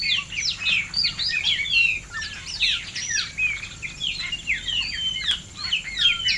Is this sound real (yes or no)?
yes